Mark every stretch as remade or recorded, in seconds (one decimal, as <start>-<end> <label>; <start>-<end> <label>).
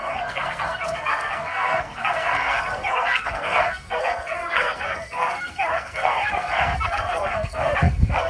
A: 0.0-8.3 remade